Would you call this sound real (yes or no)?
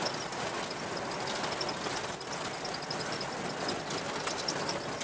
yes